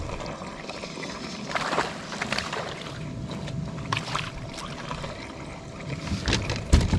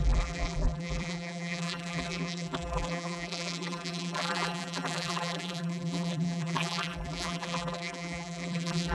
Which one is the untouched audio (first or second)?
first